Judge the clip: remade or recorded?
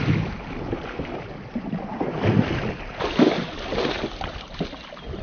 recorded